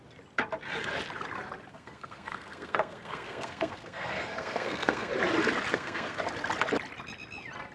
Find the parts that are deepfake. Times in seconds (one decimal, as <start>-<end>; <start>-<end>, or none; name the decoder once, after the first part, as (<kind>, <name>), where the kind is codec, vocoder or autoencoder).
1.7-5.1 (codec, SNAC); 5.7-6.2